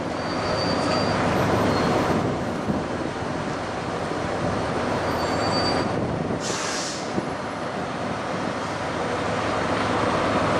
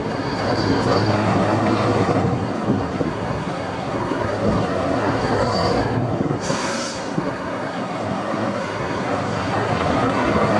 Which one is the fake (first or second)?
second